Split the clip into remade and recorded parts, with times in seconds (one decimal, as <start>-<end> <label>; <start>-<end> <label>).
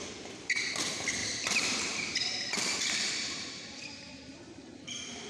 0.0-1.2 recorded; 1.2-4.4 remade; 4.4-5.3 recorded